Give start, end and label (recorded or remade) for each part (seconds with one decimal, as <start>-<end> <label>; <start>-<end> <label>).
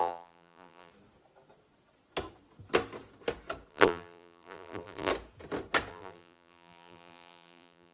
0.0-0.9 remade; 0.9-3.7 recorded; 3.7-5.1 remade; 5.1-5.9 recorded; 5.9-7.9 remade